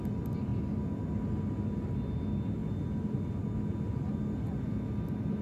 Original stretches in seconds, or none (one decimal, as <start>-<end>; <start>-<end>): 0.0-5.4